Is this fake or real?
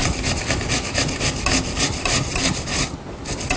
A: real